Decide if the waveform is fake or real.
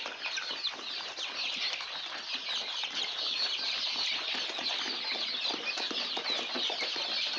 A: real